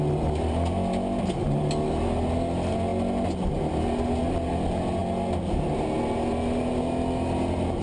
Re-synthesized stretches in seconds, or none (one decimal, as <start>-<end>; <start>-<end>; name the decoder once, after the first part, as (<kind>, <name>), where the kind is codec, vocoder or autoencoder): none

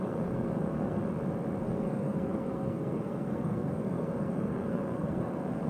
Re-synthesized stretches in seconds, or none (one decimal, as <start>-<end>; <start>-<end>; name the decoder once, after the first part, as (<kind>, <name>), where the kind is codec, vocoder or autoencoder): 0.0-1.0 (codec, SNAC); 1.6-5.7

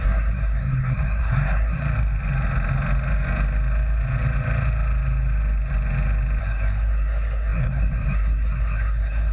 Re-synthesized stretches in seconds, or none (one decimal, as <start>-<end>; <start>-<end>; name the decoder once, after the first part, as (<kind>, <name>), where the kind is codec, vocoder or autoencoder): 0.0-1.8 (codec, SNAC); 6.4-9.3

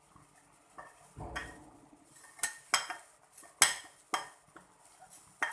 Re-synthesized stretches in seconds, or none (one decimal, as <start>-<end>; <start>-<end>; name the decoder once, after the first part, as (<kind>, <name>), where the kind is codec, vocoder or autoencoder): none

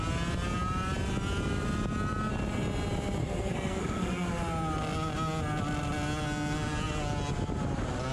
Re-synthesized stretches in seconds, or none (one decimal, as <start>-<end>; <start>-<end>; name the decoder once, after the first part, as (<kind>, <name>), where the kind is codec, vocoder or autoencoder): 3.2-4.3 (codec, SNAC)

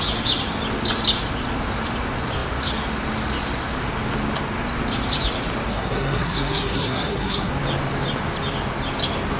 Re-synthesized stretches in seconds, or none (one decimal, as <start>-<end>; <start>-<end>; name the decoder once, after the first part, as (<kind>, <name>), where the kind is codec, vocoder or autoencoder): 5.7-7.5 (codec, SNAC)

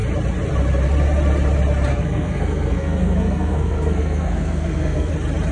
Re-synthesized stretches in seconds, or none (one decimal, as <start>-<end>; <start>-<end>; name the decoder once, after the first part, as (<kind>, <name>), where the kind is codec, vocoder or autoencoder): 1.9-5.1 (codec, SNAC)